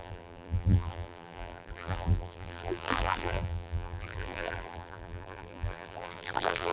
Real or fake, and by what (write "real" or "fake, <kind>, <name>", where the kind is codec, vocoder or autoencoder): fake, vocoder, BigVGAN v2